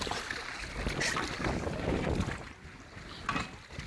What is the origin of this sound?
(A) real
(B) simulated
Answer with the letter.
A